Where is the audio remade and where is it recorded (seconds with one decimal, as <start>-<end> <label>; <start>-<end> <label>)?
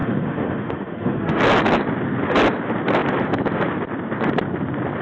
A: 0.0-1.4 remade; 1.4-5.0 recorded